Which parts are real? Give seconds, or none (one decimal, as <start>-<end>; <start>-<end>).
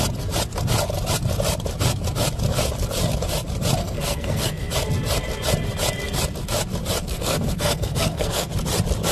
0.0-3.8; 4.7-7.0; 8.5-9.1